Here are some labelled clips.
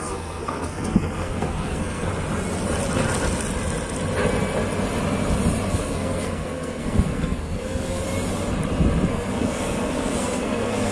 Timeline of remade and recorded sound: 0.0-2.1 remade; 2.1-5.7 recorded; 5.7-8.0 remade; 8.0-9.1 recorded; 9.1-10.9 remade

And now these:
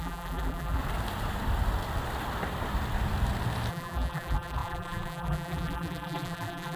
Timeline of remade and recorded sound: 0.0-0.8 remade; 0.8-3.7 recorded; 3.7-6.8 remade